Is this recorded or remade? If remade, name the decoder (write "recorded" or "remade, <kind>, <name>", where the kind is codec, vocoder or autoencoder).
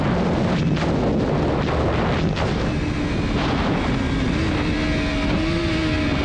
recorded